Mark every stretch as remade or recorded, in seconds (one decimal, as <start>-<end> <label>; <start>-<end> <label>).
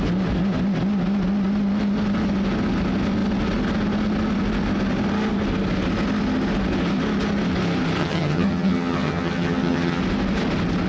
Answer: 0.0-8.0 recorded; 8.0-10.0 remade; 10.0-10.9 recorded